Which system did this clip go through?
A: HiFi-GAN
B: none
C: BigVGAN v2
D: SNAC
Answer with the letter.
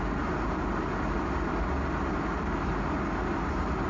B